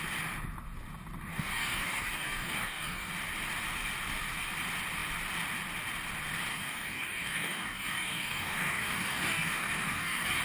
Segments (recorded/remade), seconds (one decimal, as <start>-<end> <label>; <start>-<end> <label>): 0.0-1.3 recorded; 1.3-3.1 remade; 3.1-6.5 recorded; 6.5-10.4 remade